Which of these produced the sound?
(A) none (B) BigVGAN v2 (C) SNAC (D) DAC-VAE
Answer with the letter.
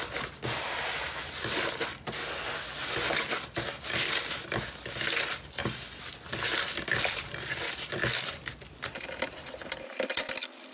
A